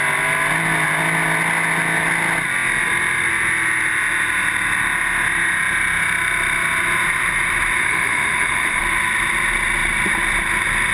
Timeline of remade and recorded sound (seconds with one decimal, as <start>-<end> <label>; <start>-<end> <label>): 0.0-7.8 recorded; 7.8-8.8 remade; 8.8-10.9 recorded